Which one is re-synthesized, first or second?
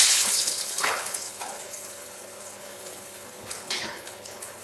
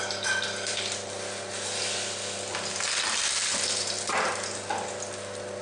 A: first